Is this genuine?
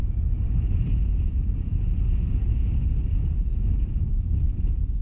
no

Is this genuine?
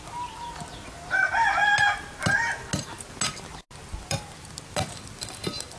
yes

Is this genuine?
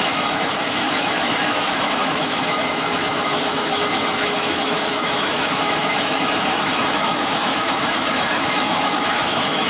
no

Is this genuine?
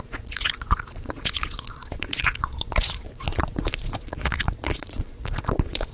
no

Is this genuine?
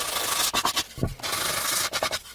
yes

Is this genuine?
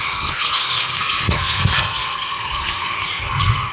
no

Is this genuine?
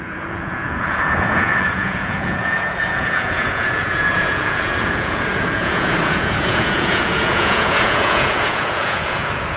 no